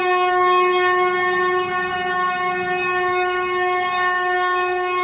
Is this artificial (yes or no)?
yes